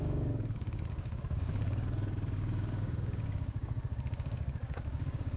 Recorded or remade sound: remade